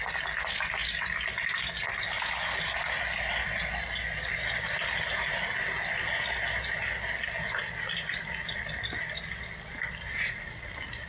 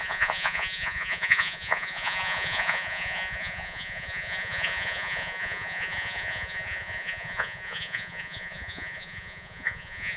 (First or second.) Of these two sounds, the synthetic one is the second